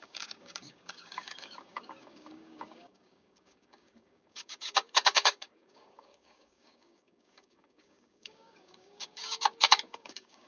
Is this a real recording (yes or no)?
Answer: no